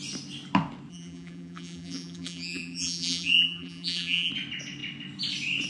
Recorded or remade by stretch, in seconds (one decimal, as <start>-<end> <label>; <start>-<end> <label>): 0.0-0.9 recorded; 0.9-4.3 remade; 4.3-5.7 recorded

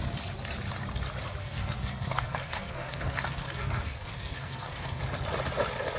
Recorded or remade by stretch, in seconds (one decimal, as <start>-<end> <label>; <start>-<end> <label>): 0.0-1.4 recorded; 1.4-5.0 remade; 5.0-6.0 recorded

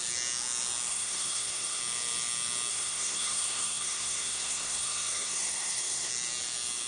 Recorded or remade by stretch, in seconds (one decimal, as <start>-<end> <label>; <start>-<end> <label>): 0.0-0.9 recorded; 0.9-1.8 remade; 1.8-2.7 recorded; 2.7-6.1 remade; 6.1-6.9 recorded

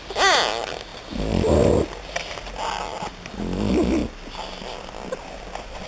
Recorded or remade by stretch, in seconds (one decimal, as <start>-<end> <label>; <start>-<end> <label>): 0.0-5.9 recorded